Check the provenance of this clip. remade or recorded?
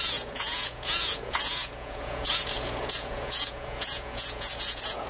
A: remade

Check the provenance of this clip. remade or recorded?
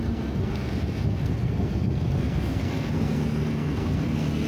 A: remade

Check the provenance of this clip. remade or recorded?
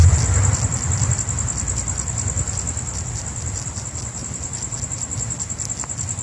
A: recorded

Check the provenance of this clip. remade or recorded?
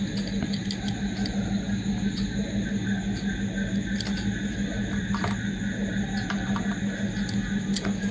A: recorded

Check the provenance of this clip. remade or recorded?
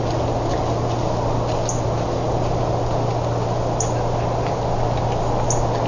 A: recorded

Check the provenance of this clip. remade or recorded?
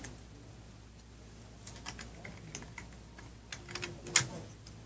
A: recorded